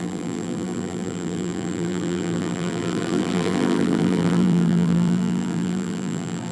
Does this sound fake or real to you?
fake